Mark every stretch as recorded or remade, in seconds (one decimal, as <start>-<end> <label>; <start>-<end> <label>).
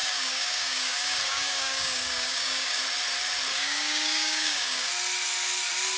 0.0-2.8 remade; 2.8-3.5 recorded; 3.5-4.9 remade; 4.9-6.0 recorded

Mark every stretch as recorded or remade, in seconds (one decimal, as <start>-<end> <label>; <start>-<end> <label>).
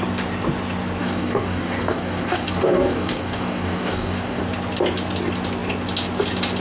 0.0-1.0 recorded; 1.0-4.4 remade; 4.4-6.6 recorded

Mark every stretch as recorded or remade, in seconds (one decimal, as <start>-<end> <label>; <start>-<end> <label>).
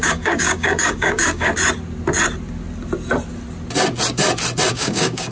0.0-1.5 remade; 1.5-4.7 recorded; 4.7-5.3 remade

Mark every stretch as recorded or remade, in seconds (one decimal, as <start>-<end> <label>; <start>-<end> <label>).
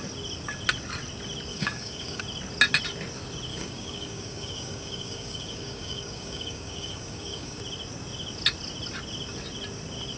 0.0-1.5 recorded; 1.5-2.2 remade; 2.2-3.5 recorded; 3.5-7.6 remade; 7.6-10.2 recorded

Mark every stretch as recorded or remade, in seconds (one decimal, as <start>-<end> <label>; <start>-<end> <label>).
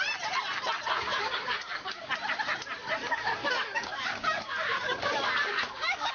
0.0-1.1 recorded; 1.1-2.1 remade; 2.1-2.8 recorded; 2.8-6.1 remade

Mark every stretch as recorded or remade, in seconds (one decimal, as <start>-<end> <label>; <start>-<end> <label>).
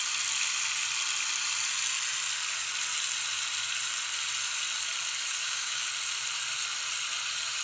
0.0-5.4 recorded; 5.4-5.9 remade; 5.9-7.6 recorded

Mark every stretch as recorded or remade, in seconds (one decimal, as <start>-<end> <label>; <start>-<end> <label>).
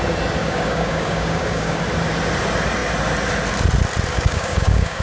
0.0-0.4 recorded; 0.4-1.8 remade; 1.8-4.1 recorded; 4.1-5.0 remade